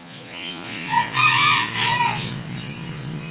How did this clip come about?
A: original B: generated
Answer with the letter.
B